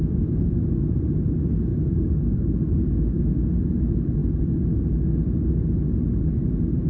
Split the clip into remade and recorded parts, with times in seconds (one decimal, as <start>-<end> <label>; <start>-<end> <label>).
0.0-1.7 recorded; 1.7-3.2 remade; 3.2-6.9 recorded